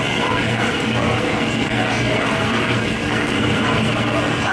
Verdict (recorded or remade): remade